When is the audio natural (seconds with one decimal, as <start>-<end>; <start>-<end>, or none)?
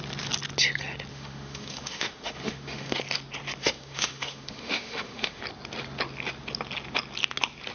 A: 0.0-1.1; 3.0-3.6; 5.4-7.7